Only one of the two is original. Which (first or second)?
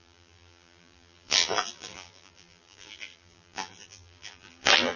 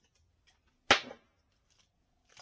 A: second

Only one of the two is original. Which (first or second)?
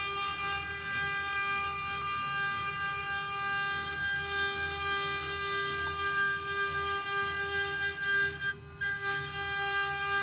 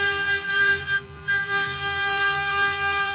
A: first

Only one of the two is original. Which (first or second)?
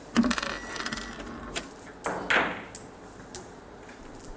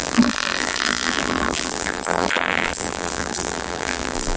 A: first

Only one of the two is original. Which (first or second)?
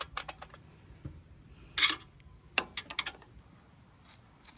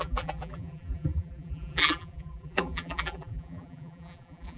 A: first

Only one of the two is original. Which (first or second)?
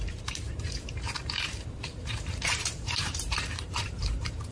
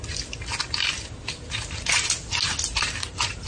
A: second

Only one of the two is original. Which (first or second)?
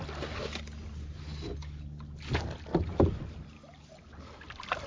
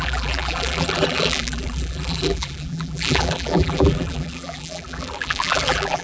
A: first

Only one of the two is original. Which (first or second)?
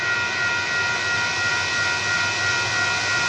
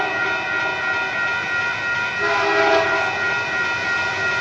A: first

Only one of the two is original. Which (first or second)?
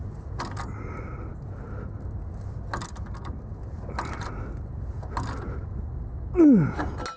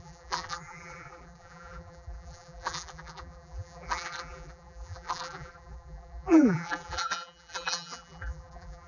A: first